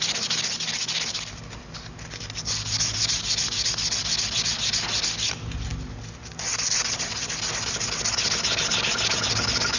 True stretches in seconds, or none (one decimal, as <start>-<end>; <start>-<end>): 0.0-9.8